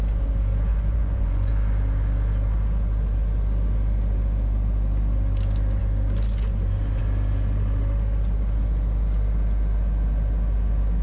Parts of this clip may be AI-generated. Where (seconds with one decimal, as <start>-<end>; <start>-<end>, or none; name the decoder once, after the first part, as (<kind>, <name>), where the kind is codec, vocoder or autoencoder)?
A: 0.7-1.5 (vocoder, Vocos)